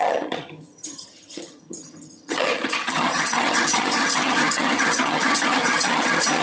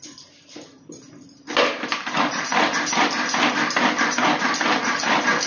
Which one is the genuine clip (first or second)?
second